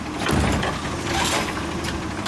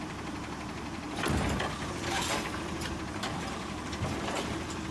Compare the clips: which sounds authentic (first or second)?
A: first